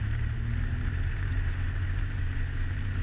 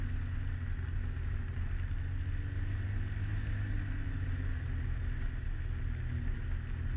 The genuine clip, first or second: second